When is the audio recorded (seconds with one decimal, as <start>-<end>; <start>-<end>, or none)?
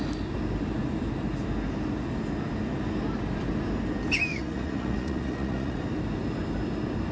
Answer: 0.0-4.3; 5.8-7.1